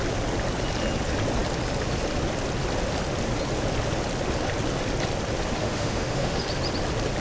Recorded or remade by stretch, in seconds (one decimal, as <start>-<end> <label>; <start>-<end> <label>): 0.0-5.6 recorded; 5.6-6.4 remade; 6.4-7.2 recorded